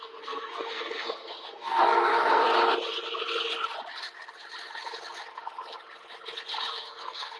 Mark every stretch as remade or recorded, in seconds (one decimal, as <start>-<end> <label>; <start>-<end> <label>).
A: 0.0-2.5 remade; 2.5-6.7 recorded; 6.7-7.4 remade